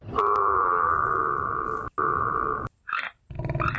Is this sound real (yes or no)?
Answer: yes